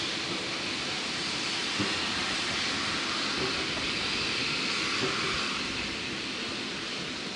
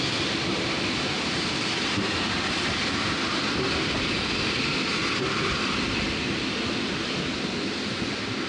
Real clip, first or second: first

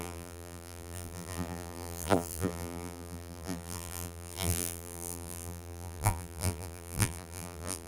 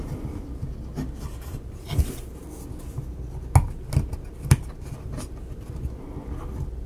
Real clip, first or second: second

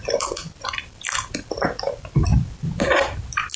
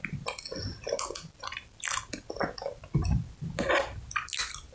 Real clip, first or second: second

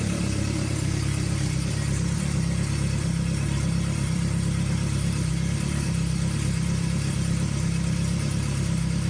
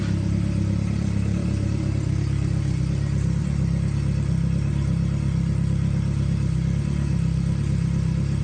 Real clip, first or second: second